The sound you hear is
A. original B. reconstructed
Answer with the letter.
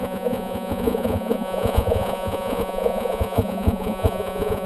B